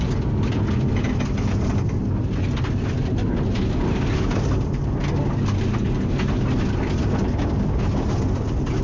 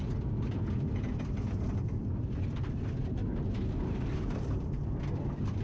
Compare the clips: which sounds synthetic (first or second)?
second